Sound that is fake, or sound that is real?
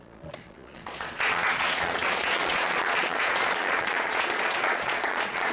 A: fake